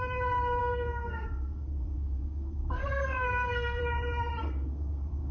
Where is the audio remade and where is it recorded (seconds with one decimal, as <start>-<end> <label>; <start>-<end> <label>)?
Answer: 0.0-0.6 recorded; 0.6-3.8 remade; 3.8-4.4 recorded; 4.4-5.3 remade